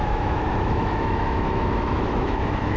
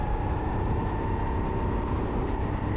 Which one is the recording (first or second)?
second